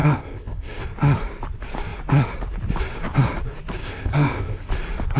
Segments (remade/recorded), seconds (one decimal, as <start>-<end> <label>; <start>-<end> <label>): 0.0-0.8 remade; 0.8-3.8 recorded; 3.8-4.7 remade; 4.7-5.2 recorded